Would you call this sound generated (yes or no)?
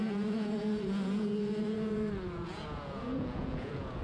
yes